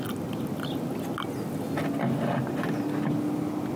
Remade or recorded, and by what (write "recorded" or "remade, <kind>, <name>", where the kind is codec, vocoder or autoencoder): recorded